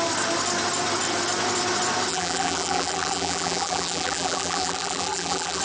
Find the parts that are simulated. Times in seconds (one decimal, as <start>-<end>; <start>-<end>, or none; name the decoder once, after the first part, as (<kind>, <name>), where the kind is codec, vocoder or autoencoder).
2.1-5.6 (vocoder, BigVGAN v2)

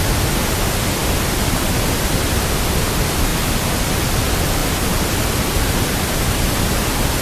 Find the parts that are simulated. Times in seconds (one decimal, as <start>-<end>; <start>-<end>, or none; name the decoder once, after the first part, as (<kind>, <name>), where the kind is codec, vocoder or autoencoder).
3.3-4.1 (vocoder, BigVGAN v2)

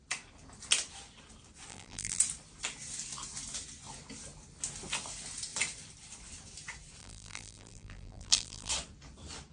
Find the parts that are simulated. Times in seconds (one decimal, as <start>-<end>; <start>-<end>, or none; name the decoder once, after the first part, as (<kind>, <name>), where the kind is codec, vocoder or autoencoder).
1.7-2.2 (vocoder, BigVGAN v2); 7.0-8.7

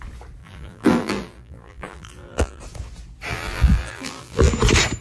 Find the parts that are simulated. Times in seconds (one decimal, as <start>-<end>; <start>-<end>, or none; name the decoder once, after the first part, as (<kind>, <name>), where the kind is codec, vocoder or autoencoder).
0.4-2.6 (vocoder, BigVGAN v2); 3.3-4.5

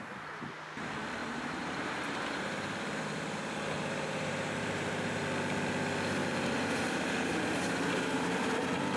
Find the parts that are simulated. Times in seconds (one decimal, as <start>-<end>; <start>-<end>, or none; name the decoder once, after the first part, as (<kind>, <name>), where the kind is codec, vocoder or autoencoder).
1.2-5.2 (vocoder, BigVGAN v2); 6.2-8.5

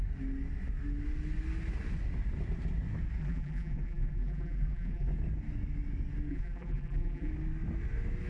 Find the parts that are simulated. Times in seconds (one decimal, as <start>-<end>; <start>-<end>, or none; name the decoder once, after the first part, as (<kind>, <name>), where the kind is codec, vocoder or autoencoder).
3.2-5.1 (vocoder, BigVGAN v2); 6.3-7.3

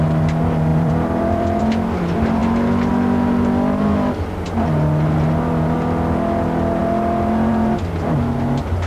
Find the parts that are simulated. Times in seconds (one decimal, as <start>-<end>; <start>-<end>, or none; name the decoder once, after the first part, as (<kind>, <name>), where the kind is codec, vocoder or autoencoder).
0.7-1.6 (vocoder, BigVGAN v2)